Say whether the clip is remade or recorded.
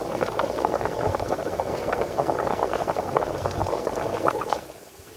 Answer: remade